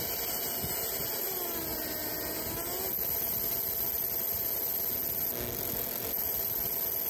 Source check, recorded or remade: recorded